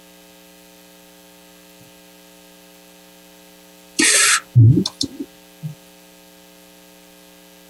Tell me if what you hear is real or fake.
real